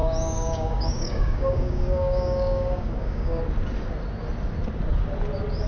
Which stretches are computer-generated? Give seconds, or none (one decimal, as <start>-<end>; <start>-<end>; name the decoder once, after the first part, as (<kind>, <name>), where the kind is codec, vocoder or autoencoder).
0.0-3.4 (codec, DAC)